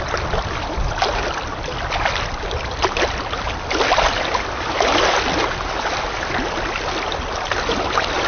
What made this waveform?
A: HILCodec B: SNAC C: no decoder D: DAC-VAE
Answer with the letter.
C